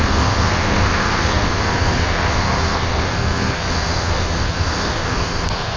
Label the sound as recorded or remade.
remade